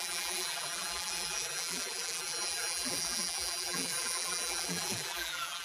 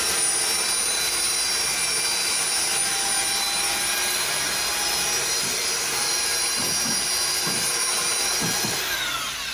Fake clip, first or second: first